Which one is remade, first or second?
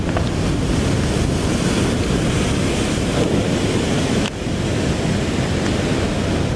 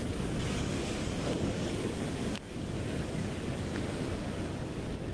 second